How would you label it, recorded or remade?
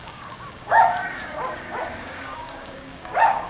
remade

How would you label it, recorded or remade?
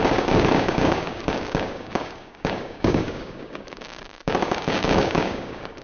remade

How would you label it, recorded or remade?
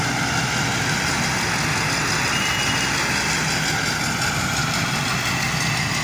recorded